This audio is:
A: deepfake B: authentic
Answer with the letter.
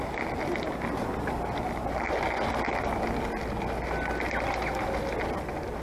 B